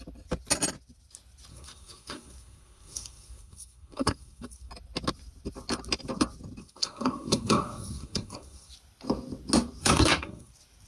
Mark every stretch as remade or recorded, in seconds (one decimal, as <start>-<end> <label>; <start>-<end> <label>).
0.0-1.5 recorded; 1.5-4.7 remade; 4.7-6.6 recorded; 6.6-8.7 remade; 8.7-9.8 recorded; 9.8-10.5 remade; 10.5-10.9 recorded